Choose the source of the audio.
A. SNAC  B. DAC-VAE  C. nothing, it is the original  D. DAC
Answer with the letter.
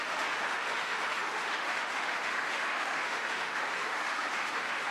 B